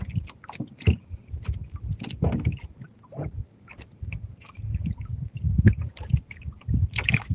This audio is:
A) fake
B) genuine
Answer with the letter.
B